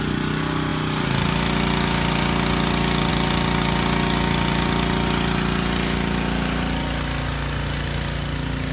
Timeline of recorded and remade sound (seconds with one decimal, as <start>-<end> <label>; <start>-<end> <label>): 0.0-8.7 recorded